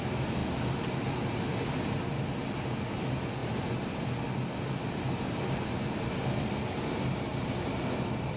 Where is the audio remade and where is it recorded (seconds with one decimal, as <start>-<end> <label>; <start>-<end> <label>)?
0.0-8.4 recorded